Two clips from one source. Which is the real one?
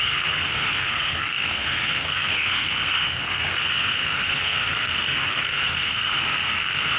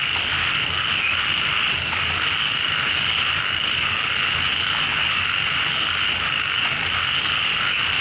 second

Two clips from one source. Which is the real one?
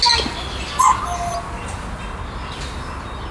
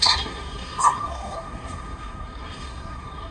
first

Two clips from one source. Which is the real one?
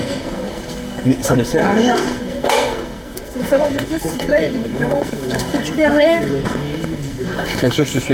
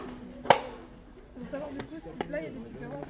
second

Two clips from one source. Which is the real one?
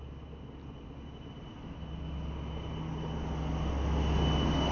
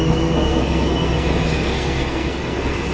first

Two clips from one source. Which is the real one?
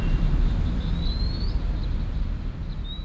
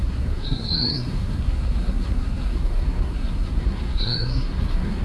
first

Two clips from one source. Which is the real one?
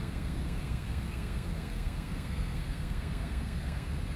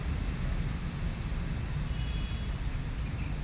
second